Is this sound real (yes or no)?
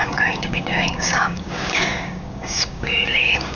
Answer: no